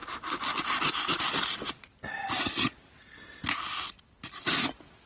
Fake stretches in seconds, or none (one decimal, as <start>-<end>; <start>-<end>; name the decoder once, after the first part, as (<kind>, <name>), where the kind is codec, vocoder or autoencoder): none